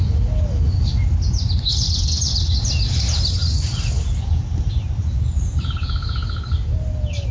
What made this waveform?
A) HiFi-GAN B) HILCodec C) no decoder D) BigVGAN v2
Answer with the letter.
C